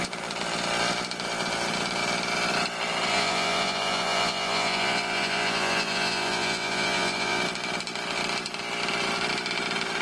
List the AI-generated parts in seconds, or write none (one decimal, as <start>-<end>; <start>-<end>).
3.1-7.4